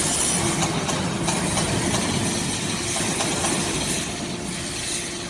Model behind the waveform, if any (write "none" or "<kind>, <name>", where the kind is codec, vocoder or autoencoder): none